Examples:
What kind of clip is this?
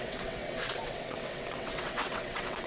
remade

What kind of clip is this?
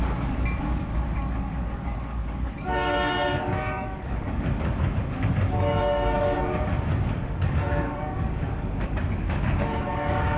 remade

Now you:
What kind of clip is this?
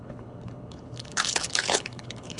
remade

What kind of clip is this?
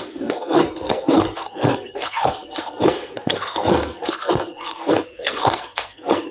remade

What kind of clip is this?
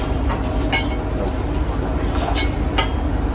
recorded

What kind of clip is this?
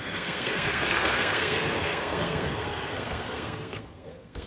remade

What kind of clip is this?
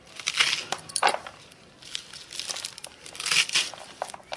remade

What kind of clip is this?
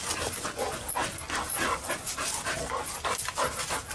recorded